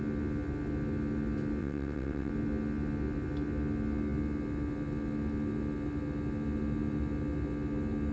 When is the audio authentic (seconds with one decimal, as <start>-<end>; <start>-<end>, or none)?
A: 0.0-1.6; 2.3-8.1